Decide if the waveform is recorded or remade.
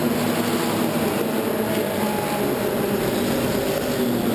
recorded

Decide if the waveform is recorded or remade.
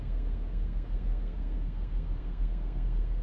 remade